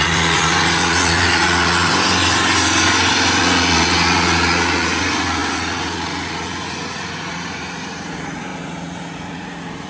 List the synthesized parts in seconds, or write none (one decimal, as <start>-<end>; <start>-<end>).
0.0-1.9; 3.4-9.9